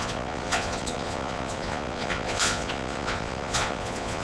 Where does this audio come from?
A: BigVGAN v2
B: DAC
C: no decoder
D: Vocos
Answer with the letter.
D